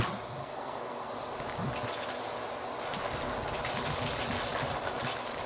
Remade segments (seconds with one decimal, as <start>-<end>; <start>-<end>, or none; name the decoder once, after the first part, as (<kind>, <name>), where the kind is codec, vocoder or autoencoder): 0.4-1.1 (codec, SNAC)

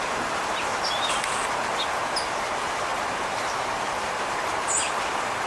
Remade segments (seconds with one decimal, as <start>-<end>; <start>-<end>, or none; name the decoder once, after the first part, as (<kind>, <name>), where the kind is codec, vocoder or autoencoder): 0.7-1.2 (vocoder, BigVGAN v2)

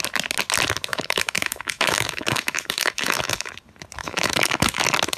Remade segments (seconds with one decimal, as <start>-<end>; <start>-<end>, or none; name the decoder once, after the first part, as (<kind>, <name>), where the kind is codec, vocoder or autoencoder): 0.9-3.5 (autoencoder, DAC-VAE); 4.0-4.8

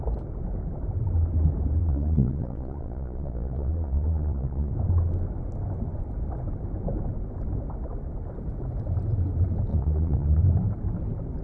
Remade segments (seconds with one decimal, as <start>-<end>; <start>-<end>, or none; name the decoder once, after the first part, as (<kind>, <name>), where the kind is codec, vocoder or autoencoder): 1.8-4.7 (vocoder, Vocos); 9.7-10.4

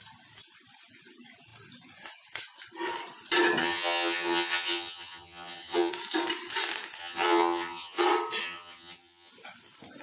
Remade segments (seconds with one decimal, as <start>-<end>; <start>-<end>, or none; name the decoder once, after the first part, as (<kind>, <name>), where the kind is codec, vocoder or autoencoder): 3.6-5.9 (vocoder, HiFi-GAN); 7.0-8.0; 8.4-9.3

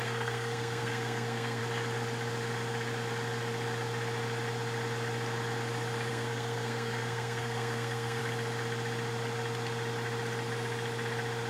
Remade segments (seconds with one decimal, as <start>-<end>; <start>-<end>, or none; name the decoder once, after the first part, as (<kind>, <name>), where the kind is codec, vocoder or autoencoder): 0.0-1.6 (codec, SNAC); 6.1-8.2

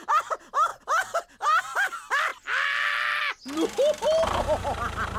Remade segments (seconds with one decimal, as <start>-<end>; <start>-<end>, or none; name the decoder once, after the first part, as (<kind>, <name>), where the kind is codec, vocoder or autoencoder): none